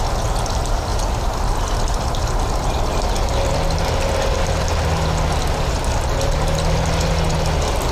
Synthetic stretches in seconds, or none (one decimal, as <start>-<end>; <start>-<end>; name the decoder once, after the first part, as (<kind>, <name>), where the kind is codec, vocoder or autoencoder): 0.9-3.0 (vocoder, BigVGAN v2)